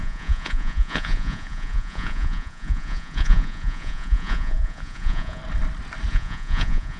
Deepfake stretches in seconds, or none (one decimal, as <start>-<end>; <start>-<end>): 0.0-5.4; 6.1-7.0